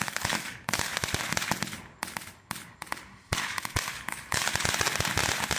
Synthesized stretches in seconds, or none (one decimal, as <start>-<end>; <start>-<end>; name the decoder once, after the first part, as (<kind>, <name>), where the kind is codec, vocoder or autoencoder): 0.0-0.9 (codec, DAC); 3.9-4.5